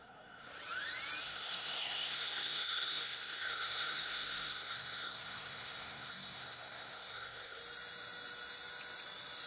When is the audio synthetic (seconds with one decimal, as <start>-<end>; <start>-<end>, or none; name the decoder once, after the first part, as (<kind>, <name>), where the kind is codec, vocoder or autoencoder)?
0.0-0.5 (codec, SNAC); 1.2-7.6